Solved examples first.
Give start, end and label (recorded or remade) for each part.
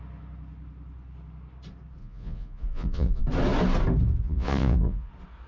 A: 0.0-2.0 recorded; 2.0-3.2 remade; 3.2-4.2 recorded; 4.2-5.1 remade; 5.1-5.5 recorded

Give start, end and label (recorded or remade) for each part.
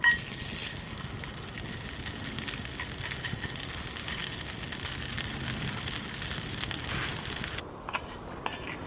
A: 0.0-8.9 recorded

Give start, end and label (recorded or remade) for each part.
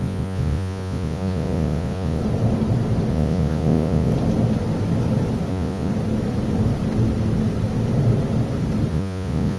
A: 0.0-2.2 remade; 2.2-3.1 recorded; 3.1-4.1 remade; 4.1-5.5 recorded; 5.5-5.9 remade; 5.9-8.9 recorded; 8.9-9.6 remade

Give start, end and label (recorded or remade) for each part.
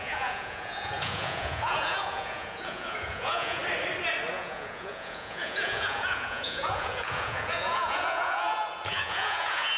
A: 0.0-3.6 remade; 3.6-4.3 recorded; 4.3-9.8 remade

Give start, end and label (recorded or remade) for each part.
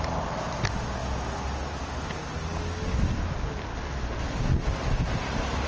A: 0.0-5.7 recorded